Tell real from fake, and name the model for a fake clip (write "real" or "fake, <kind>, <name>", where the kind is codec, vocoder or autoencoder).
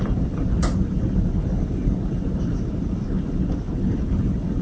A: real